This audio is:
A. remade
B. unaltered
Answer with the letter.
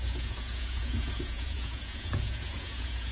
A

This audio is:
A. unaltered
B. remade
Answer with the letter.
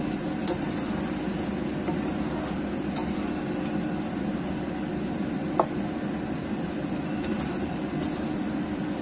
A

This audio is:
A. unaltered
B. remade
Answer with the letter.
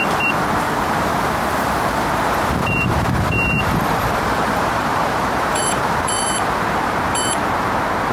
B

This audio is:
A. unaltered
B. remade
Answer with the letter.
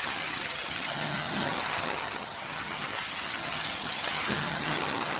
B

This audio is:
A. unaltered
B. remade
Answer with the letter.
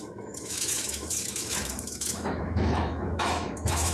B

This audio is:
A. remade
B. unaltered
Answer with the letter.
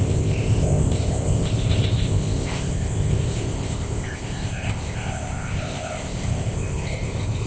A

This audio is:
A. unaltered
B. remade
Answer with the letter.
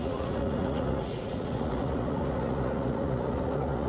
B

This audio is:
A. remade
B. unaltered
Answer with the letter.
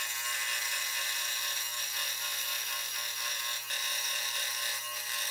A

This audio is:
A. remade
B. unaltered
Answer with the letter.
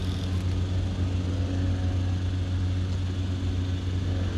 B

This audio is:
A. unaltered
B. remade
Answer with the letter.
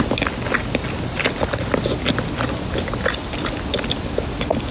A